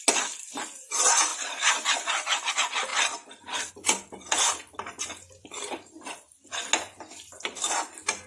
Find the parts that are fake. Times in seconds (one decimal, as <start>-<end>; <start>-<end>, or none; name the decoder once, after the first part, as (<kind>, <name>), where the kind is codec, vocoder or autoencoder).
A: none

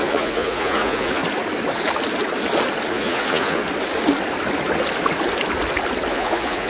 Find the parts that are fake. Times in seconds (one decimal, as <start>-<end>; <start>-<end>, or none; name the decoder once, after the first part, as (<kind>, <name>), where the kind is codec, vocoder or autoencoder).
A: 0.0-1.2 (vocoder, Vocos); 2.9-3.6; 6.1-6.7

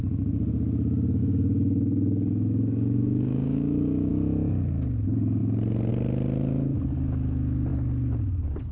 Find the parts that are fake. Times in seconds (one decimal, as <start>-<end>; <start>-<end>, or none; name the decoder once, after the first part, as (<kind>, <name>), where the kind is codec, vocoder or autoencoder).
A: 1.2-4.1 (codec, DAC)

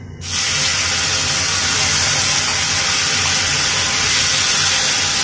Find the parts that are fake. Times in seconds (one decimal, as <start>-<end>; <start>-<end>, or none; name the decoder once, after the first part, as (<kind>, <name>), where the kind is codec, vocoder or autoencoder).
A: none

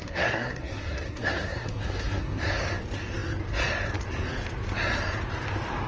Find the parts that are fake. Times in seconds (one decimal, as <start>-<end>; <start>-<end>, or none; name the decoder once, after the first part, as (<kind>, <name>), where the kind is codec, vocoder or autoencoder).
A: 0.0-2.4 (codec, SNAC)